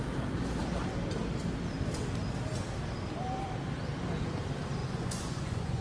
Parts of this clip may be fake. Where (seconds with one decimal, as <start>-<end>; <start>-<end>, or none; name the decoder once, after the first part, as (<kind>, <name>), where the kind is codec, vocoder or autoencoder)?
4.8-5.8 (vocoder, Vocos)